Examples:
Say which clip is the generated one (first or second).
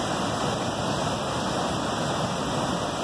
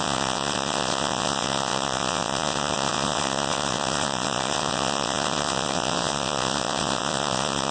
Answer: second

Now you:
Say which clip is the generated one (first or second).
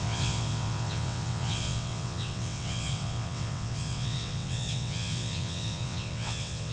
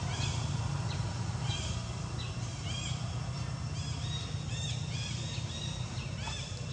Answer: first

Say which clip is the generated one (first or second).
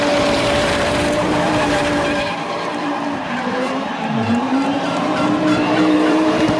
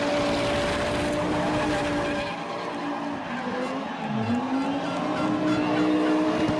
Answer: first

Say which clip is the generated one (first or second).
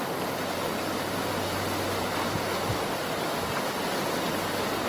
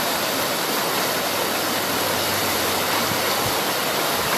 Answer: second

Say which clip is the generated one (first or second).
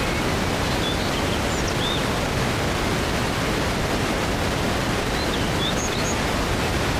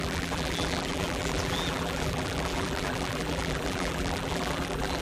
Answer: second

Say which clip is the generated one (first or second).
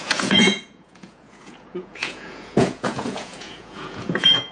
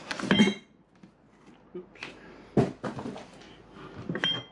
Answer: first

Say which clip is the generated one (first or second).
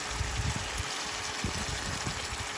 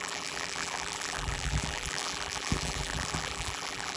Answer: second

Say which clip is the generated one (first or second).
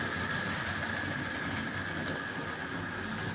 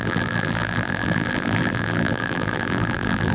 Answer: second